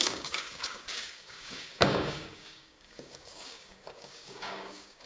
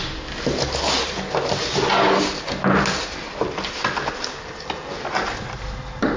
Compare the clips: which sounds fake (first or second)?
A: first